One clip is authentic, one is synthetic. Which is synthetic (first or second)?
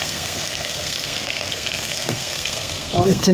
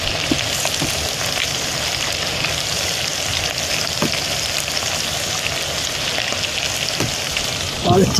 first